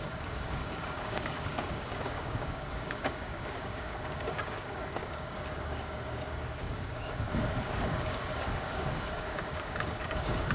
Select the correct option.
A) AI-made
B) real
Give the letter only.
A